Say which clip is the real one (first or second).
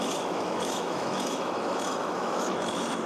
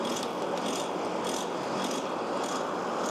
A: second